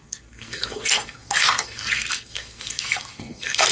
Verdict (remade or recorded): remade